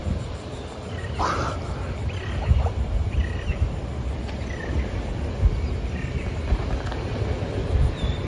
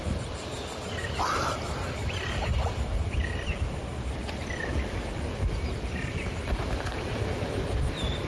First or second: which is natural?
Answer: first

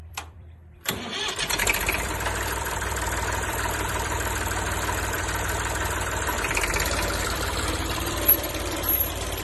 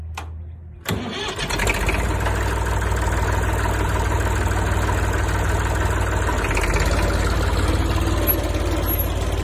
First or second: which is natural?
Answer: second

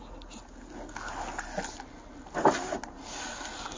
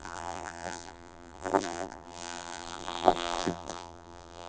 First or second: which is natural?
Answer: first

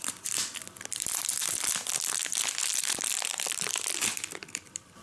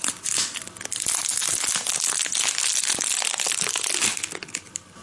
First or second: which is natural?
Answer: second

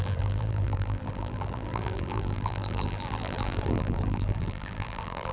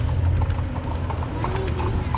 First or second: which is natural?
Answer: second